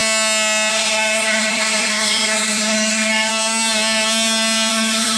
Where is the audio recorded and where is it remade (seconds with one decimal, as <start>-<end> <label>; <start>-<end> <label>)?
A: 0.0-0.7 recorded; 0.7-3.3 remade; 3.3-4.7 recorded; 4.7-5.2 remade